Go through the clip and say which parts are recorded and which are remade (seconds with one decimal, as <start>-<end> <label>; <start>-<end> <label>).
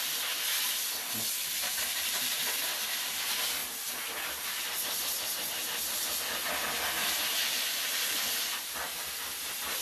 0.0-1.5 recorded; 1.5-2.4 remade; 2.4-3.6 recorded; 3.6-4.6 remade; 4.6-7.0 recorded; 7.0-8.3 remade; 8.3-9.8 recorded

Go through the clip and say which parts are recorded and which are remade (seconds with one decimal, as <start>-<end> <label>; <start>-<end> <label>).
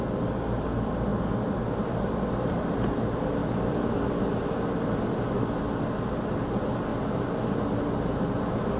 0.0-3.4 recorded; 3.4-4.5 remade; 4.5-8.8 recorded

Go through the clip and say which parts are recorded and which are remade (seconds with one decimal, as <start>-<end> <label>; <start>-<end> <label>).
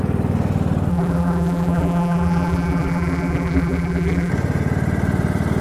0.0-0.9 recorded; 0.9-4.3 remade; 4.3-5.6 recorded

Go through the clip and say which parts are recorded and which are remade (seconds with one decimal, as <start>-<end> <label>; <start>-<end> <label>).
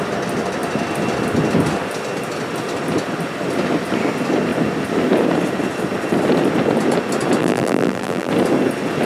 0.0-7.4 recorded; 7.4-8.3 remade; 8.3-9.1 recorded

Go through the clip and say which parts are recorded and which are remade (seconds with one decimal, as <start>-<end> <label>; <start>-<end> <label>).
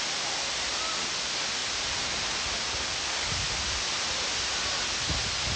0.0-1.6 recorded; 1.6-2.4 remade; 2.4-5.6 recorded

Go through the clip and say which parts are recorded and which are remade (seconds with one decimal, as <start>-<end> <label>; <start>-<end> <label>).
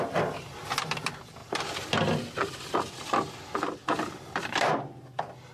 0.0-5.5 recorded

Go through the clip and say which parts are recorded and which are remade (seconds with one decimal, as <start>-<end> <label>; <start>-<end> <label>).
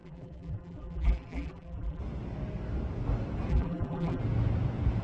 0.0-2.0 remade; 2.0-3.5 recorded; 3.5-4.2 remade; 4.2-5.0 recorded